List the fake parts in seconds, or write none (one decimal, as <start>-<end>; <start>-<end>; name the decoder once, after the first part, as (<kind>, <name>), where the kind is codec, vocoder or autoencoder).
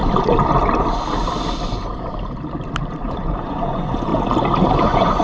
3.1-4.1 (vocoder, Vocos); 4.8-5.2